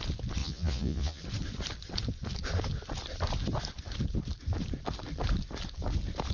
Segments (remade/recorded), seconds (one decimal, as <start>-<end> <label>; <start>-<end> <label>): 0.0-0.4 recorded; 0.4-1.2 remade; 1.2-6.3 recorded